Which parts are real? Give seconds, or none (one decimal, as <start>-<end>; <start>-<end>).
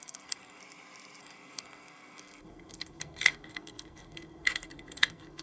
0.6-1.2